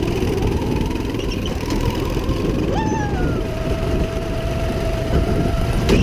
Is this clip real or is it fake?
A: fake